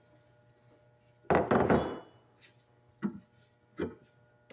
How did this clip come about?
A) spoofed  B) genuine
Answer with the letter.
B